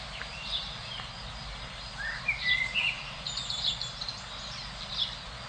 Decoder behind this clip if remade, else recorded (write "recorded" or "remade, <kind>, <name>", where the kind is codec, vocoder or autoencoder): recorded